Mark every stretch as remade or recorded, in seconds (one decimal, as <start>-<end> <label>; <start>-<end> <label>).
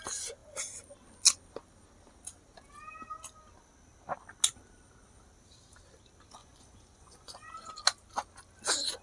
0.0-6.4 recorded; 6.4-7.7 remade; 7.7-9.0 recorded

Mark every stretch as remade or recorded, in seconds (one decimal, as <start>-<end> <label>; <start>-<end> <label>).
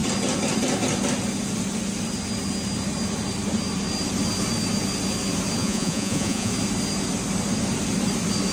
0.0-5.6 recorded; 5.6-6.5 remade; 6.5-8.5 recorded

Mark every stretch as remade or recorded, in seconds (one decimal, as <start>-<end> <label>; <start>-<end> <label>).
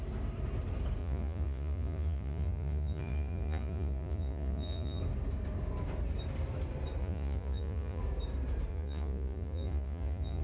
0.0-1.0 recorded; 1.0-5.0 remade; 5.0-7.0 recorded; 7.0-8.0 remade; 8.0-8.7 recorded; 8.7-10.4 remade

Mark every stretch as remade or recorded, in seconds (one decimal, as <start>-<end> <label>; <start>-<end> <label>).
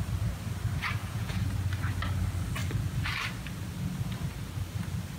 0.0-1.0 recorded; 1.0-1.5 remade; 1.5-5.2 recorded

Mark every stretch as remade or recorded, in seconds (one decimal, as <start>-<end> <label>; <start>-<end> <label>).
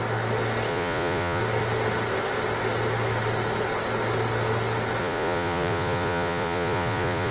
0.0-0.7 recorded; 0.7-1.4 remade; 1.4-5.0 recorded; 5.0-7.3 remade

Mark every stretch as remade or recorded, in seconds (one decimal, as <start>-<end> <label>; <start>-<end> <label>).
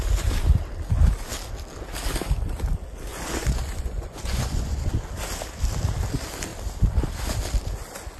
0.0-3.1 recorded; 3.1-4.9 remade; 4.9-8.2 recorded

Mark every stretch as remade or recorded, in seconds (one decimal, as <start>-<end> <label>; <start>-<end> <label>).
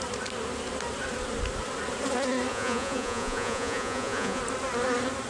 0.0-2.5 recorded; 2.5-4.4 remade; 4.4-5.3 recorded